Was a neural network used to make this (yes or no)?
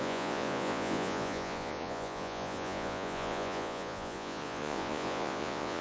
yes